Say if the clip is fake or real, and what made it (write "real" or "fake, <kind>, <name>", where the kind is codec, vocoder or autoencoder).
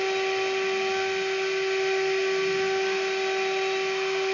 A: real